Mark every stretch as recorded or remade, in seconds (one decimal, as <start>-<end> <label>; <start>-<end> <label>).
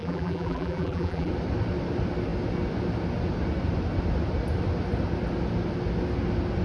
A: 0.0-1.3 remade; 1.3-6.6 recorded